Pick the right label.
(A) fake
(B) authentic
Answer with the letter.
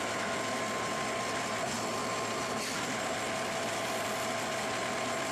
B